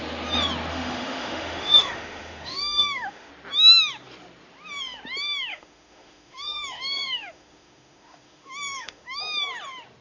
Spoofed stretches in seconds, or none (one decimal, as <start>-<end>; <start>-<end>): 0.7-3.3; 5.5-9.2